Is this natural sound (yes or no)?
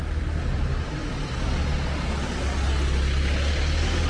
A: yes